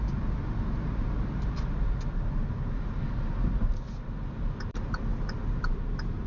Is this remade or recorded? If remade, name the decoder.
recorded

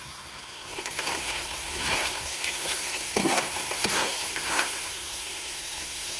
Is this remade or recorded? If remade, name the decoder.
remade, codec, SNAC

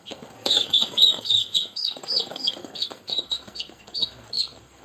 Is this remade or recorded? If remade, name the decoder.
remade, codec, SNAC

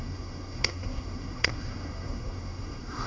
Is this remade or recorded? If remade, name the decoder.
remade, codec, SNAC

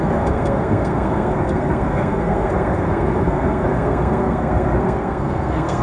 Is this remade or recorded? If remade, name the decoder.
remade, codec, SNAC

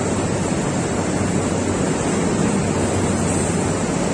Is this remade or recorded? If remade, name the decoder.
recorded